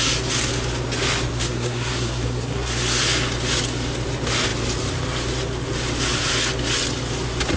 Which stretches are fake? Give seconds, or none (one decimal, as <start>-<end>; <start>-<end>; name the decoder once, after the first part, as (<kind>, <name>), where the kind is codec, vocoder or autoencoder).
1.3-3.0 (codec, SNAC)